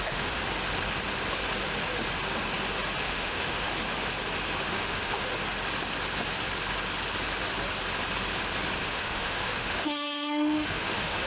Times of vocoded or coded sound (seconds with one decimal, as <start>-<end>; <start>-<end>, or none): 0.0-0.4; 3.0-3.7; 4.7-5.3; 8.8-11.3